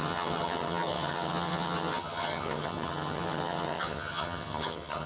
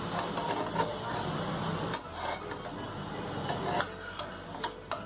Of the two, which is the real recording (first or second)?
second